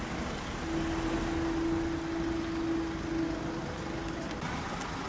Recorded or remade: recorded